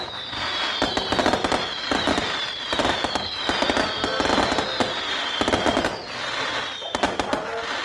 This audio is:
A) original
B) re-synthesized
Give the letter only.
A